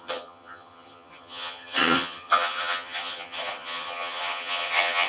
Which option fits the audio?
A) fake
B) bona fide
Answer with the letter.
A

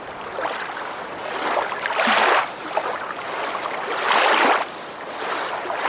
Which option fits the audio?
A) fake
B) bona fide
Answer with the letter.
B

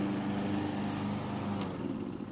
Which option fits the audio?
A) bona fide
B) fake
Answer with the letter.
A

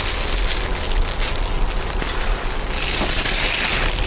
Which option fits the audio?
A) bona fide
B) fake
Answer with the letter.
A